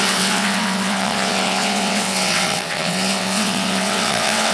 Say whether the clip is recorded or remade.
remade